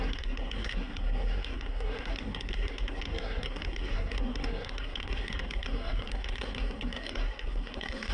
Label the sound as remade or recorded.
remade